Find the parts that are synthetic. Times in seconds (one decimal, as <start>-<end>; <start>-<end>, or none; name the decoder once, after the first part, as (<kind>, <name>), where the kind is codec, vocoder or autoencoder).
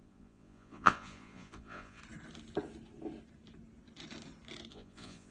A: 0.0-2.0 (vocoder, Vocos); 4.7-5.3